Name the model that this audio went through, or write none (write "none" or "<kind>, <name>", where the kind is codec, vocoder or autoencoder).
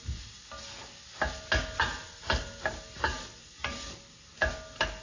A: none